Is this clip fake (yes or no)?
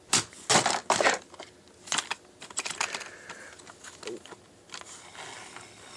no